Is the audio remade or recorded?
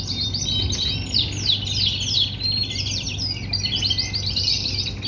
recorded